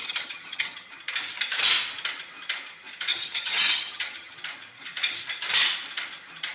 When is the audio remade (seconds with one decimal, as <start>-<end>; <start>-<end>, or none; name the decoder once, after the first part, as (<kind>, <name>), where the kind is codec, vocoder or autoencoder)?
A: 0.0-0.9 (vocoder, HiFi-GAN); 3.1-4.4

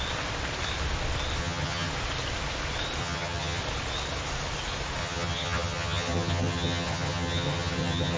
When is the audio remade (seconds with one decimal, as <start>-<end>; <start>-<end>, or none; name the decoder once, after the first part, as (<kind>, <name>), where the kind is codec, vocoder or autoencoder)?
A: 1.4-1.9 (vocoder, HiFi-GAN); 3.0-3.6; 5.0-8.2

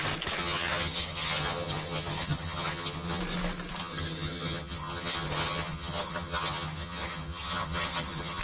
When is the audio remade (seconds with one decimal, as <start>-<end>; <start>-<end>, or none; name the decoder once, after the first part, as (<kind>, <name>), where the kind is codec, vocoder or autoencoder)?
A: 0.4-3.2 (vocoder, HiFi-GAN); 3.8-8.4